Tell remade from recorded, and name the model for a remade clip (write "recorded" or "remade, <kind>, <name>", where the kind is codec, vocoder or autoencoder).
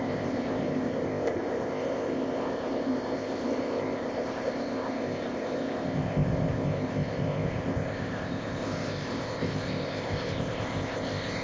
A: remade, codec, ZipCodec